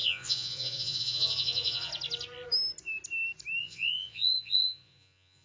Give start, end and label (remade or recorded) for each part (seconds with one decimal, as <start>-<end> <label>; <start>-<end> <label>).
0.0-1.9 remade; 1.9-3.6 recorded; 3.6-5.4 remade